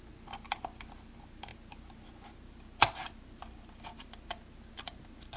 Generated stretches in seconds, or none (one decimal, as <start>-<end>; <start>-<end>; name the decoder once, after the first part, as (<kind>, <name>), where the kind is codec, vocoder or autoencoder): none